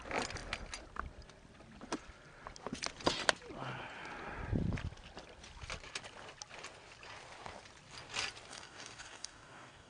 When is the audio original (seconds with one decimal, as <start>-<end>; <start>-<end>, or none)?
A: 0.0-8.5